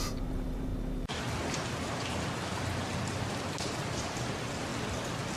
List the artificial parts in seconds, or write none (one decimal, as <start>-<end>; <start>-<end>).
0.0-0.7; 3.9-4.7